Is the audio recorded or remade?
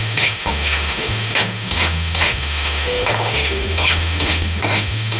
remade